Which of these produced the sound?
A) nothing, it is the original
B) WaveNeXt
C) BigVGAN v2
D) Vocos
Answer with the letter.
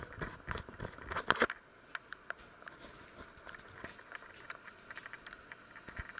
A